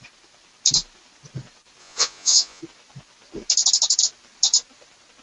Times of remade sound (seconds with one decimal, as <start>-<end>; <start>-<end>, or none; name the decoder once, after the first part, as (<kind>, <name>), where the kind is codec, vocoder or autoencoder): 1.8-2.6 (vocoder, Vocos)